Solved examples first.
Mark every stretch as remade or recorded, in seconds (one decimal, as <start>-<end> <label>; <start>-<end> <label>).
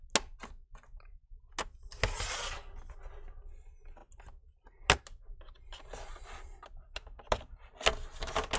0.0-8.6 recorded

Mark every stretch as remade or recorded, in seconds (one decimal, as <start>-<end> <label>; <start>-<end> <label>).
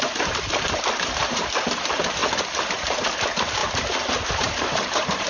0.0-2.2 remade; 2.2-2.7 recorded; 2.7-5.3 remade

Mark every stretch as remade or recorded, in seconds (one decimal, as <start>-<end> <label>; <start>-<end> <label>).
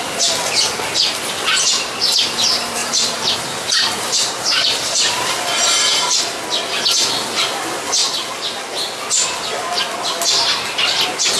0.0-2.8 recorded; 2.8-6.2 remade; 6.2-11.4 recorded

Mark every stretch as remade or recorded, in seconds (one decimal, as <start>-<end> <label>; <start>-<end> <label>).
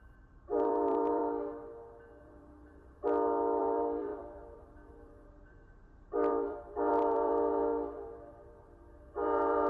0.0-1.2 remade; 1.2-2.2 recorded; 2.2-3.0 remade; 3.0-3.6 recorded; 3.6-9.7 remade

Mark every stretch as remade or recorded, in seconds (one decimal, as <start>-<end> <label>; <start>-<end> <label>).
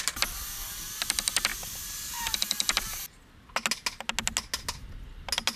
0.0-1.5 recorded; 1.5-3.0 remade; 3.0-5.6 recorded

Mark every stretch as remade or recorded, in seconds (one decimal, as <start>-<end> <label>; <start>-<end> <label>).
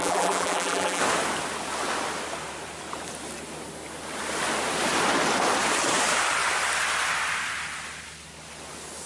0.0-1.0 remade; 1.0-9.1 recorded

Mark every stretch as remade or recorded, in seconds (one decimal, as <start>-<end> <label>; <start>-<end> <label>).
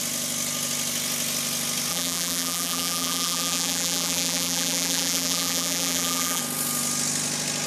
0.0-1.9 recorded; 1.9-6.4 remade; 6.4-7.7 recorded